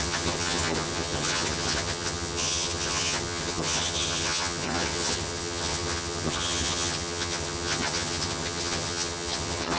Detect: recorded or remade remade